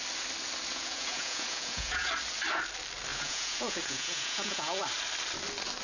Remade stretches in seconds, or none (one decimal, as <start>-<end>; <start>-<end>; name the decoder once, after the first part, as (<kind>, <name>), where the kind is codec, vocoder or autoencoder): 0.7-2.1 (vocoder, Vocos); 3.1-4.8